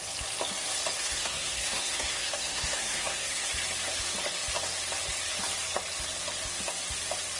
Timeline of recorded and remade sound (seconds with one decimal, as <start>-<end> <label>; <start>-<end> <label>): 0.0-1.0 recorded; 1.0-3.5 remade; 3.5-7.4 recorded